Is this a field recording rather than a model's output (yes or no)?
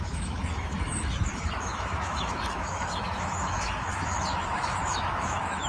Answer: no